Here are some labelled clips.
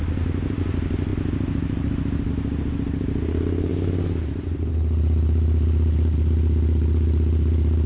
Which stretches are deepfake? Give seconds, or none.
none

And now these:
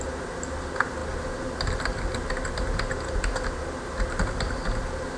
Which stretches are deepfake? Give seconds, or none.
none

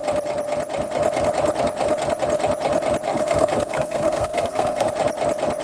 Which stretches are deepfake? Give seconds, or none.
3.1-4.9 (codec, SNAC)

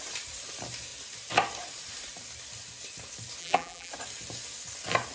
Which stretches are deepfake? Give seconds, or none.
3.4-3.9 (vocoder, BigVGAN v2)

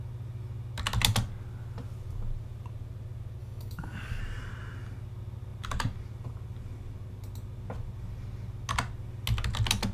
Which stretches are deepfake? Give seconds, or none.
3.4-4.2 (codec, DAC)